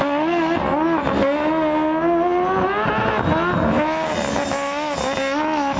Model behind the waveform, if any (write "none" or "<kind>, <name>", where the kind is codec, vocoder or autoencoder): none